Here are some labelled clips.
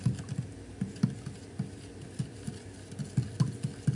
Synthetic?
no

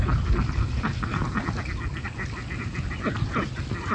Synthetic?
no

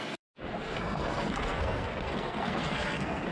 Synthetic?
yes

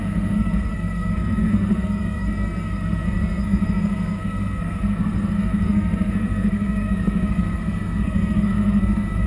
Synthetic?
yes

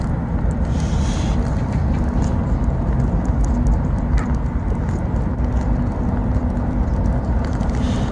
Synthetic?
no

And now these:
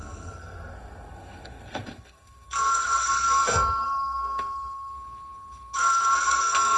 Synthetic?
yes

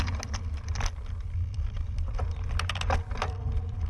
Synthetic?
no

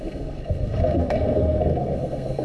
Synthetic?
yes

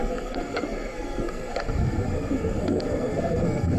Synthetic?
yes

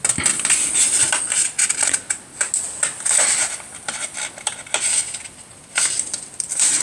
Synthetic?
no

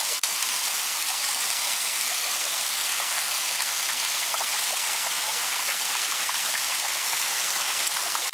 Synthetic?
yes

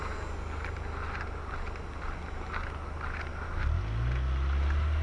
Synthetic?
no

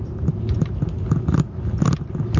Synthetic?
no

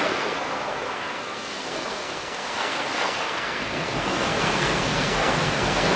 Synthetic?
yes